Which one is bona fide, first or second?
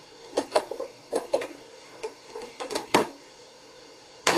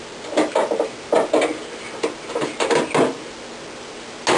second